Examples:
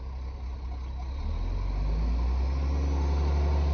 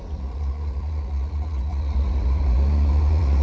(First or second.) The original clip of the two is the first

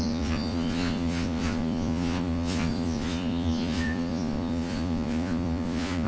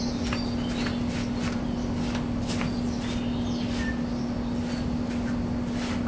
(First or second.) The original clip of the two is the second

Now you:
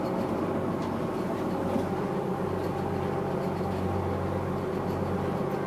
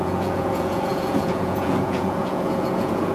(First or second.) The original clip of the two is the first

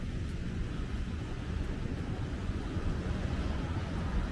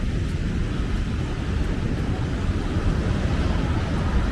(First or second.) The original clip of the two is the second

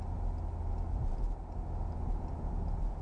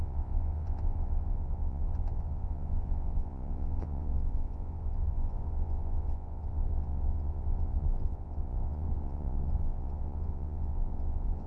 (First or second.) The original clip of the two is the first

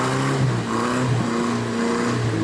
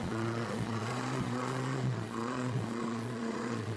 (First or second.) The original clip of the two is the first